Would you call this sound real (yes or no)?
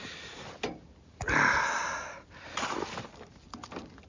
yes